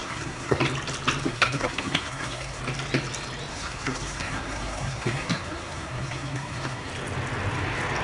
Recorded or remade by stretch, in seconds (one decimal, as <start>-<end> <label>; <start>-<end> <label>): 0.0-0.6 remade; 0.6-1.2 recorded; 1.2-2.6 remade; 2.6-3.5 recorded; 3.5-6.9 remade; 6.9-8.0 recorded